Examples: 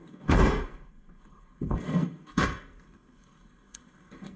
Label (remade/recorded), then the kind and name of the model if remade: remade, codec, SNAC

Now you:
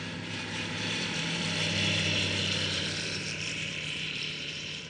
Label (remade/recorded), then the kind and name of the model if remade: remade, vocoder, BigVGAN v2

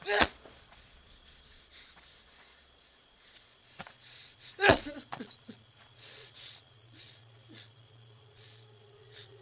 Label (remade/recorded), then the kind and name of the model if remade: remade, vocoder, Vocos